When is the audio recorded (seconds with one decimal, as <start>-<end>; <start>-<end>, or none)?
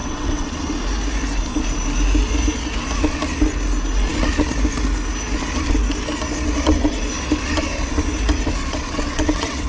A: 0.6-8.6